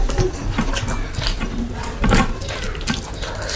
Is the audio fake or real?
real